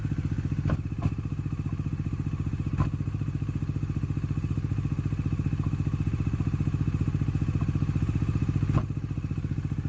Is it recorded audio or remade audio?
recorded